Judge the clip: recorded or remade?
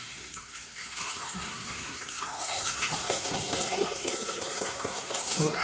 remade